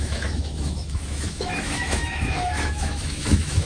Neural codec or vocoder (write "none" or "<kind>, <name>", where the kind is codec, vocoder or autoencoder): autoencoder, DAC-VAE